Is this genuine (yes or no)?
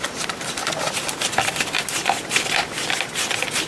yes